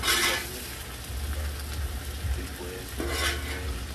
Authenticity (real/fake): real